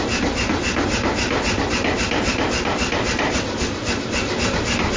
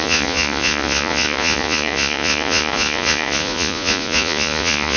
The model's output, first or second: second